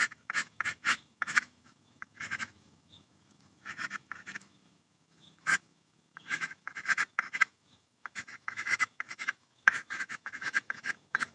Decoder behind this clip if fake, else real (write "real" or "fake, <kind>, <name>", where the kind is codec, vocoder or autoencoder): fake, autoencoder, DAC-VAE